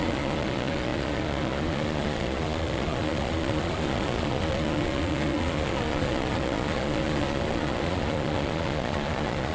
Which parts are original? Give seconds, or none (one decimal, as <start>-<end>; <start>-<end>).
none